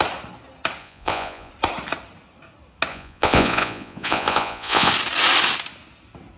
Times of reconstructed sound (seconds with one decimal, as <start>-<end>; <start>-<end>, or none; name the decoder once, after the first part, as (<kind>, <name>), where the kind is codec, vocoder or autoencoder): 0.8-1.5 (vocoder, Vocos); 2.9-4.9